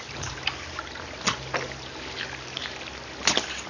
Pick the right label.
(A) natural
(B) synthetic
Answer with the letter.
A